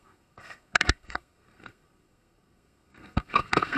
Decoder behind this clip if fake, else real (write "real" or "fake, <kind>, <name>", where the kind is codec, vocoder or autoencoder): fake, codec, SNAC